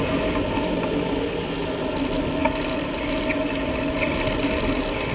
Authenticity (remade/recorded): recorded